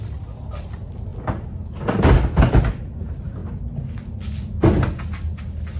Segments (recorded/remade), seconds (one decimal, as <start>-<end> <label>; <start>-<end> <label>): 0.0-5.8 recorded